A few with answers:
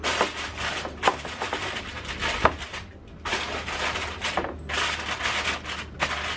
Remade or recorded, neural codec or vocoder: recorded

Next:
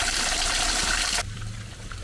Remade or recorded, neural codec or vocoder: remade, vocoder, BigVGAN v2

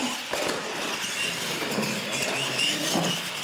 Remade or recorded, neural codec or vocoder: recorded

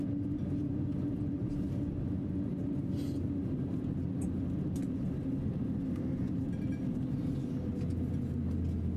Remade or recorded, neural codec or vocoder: recorded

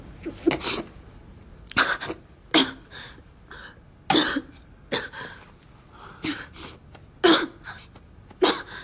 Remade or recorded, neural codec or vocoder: recorded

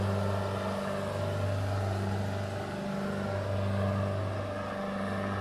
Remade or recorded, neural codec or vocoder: recorded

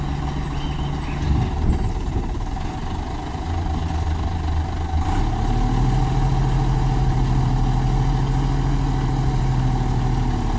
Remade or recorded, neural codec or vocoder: recorded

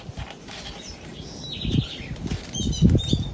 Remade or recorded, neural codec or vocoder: remade, vocoder, BigVGAN v2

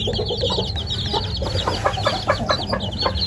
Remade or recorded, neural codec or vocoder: recorded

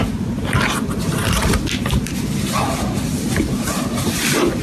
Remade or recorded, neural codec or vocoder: recorded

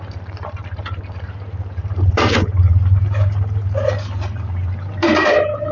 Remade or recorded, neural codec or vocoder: remade, vocoder, BigVGAN v2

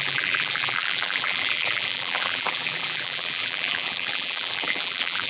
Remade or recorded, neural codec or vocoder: remade, vocoder, BigVGAN v2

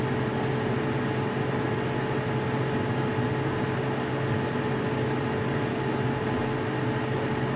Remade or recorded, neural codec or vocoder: recorded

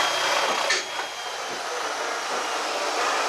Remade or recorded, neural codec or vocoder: recorded